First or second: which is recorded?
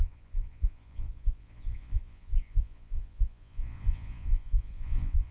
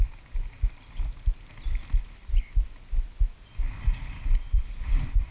second